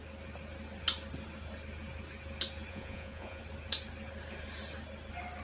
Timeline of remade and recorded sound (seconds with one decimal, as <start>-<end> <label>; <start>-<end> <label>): 0.0-2.7 recorded; 2.7-3.4 remade; 3.4-5.4 recorded